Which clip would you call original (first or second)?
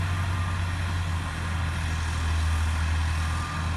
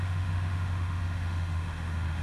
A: first